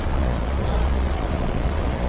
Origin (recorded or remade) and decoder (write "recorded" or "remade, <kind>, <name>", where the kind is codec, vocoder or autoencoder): remade, vocoder, Vocos